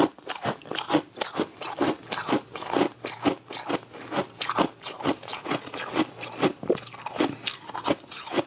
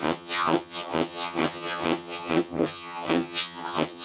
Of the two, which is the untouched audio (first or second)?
first